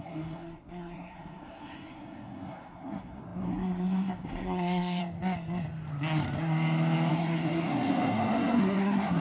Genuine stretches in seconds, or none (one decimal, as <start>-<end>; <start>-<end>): 5.0-7.1